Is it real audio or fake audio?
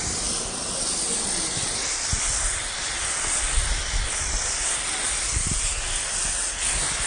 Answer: real